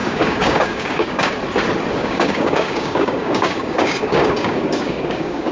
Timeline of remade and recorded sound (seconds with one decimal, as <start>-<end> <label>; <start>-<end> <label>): 0.0-1.3 remade; 1.3-2.0 recorded; 2.0-5.5 remade